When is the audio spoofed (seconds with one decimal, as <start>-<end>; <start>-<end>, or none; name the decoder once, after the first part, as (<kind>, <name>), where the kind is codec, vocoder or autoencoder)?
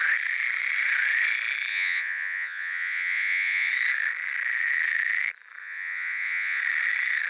1.7-3.7 (vocoder, Vocos); 5.6-6.6